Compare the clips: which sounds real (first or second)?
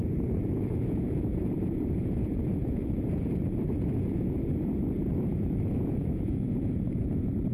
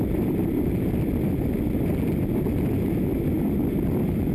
second